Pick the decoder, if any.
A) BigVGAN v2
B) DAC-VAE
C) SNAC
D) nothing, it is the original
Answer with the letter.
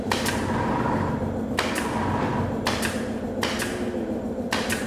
D